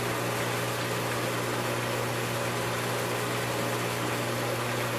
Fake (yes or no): no